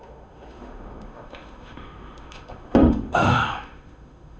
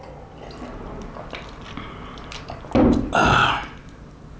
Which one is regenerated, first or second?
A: first